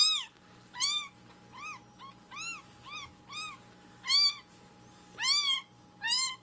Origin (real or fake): real